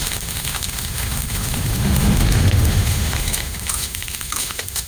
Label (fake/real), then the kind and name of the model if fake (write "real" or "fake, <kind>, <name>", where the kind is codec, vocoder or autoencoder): fake, autoencoder, DAC-VAE